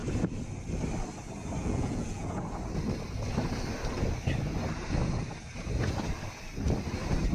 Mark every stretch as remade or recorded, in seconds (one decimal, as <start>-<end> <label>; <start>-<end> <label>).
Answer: 0.0-1.6 recorded; 1.6-2.4 remade; 2.4-7.3 recorded